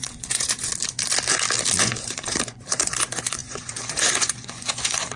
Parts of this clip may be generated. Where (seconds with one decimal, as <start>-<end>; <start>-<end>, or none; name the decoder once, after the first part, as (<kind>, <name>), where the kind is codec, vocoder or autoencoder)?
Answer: 0.0-0.7 (vocoder, Vocos); 1.8-5.2